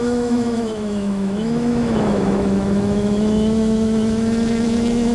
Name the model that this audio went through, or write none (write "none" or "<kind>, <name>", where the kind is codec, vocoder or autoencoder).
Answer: autoencoder, DAC-VAE